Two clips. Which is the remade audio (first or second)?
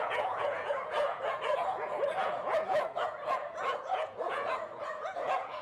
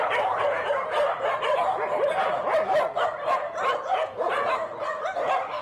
first